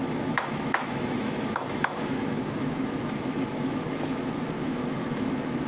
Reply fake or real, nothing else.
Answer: fake